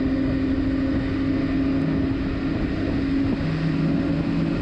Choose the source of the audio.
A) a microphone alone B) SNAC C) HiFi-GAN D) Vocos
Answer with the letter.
A